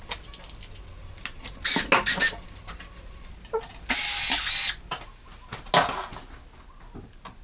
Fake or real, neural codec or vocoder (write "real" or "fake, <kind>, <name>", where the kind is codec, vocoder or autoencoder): real